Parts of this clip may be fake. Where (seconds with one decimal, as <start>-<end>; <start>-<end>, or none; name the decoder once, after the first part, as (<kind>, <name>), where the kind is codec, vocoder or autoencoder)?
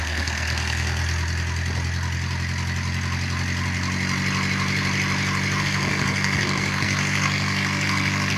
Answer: 0.0-1.0 (codec, SNAC); 5.6-8.4